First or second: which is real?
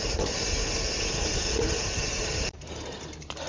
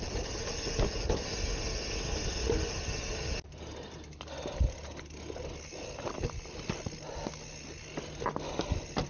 second